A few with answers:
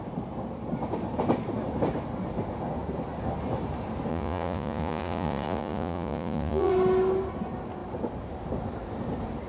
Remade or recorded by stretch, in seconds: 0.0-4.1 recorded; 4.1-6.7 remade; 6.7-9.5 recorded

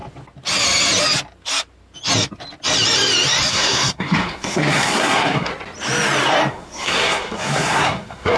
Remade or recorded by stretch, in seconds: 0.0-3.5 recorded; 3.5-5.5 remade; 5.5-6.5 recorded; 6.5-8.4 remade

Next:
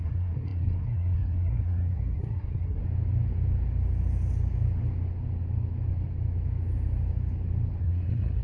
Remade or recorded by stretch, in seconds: 0.0-2.8 remade; 2.8-7.8 recorded; 7.8-8.4 remade

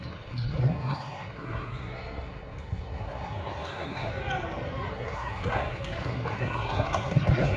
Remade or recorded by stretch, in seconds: 0.0-4.1 remade; 4.1-4.9 recorded; 4.9-7.6 remade